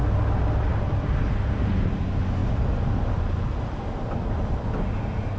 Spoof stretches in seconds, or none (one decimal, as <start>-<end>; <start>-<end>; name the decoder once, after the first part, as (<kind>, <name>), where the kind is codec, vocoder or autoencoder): none